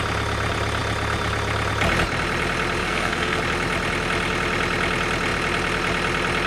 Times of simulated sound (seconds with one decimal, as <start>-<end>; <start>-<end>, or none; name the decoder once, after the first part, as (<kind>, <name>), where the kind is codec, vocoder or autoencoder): 2.8-3.4 (codec, SNAC)